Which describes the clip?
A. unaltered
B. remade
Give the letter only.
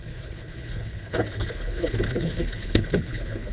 B